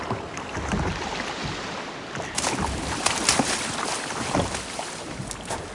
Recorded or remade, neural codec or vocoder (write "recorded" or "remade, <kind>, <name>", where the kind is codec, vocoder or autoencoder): recorded